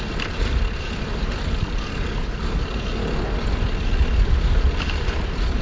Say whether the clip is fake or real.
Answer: real